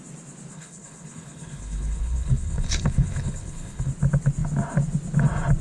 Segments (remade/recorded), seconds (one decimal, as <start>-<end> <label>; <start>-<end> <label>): 0.0-0.5 recorded; 0.5-3.9 remade; 3.9-5.6 recorded